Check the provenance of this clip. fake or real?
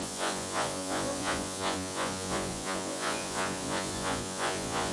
fake